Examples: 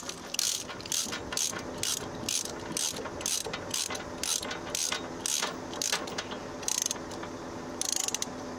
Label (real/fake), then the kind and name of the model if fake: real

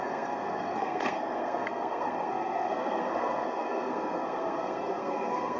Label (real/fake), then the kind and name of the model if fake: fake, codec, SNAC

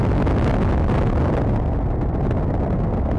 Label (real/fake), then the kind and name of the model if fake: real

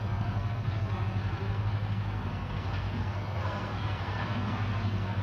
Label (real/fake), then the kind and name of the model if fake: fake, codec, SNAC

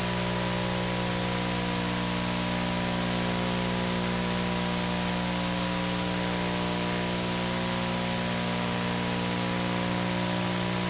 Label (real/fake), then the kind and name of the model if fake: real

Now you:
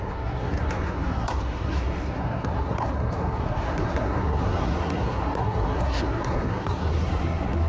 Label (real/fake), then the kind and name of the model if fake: fake, codec, SNAC